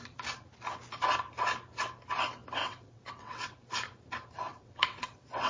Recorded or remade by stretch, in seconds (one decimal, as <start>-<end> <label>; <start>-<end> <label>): 0.0-2.6 recorded; 2.6-3.6 remade; 3.6-4.4 recorded; 4.4-5.5 remade